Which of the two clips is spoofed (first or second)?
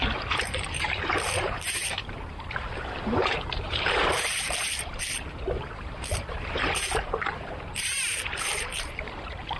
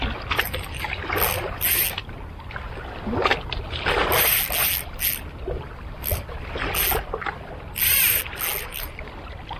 first